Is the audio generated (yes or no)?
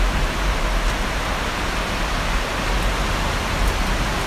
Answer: no